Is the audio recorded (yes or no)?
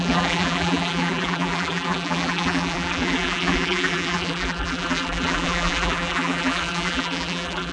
no